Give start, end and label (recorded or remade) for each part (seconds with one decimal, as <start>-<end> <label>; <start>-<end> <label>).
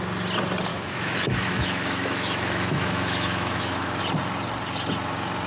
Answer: 0.0-0.7 recorded; 0.7-4.0 remade; 4.0-5.5 recorded